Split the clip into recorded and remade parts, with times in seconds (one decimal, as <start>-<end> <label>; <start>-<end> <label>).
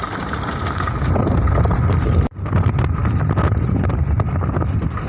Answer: 0.0-5.1 recorded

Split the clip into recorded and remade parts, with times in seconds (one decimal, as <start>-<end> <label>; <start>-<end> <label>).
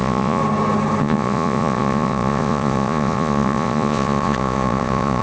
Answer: 0.0-0.4 remade; 0.4-1.0 recorded; 1.0-5.2 remade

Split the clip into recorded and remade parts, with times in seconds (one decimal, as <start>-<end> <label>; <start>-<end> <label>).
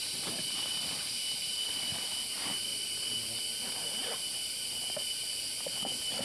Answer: 0.0-6.2 recorded